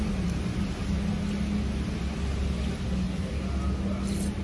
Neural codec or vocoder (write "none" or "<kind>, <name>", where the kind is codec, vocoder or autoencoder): none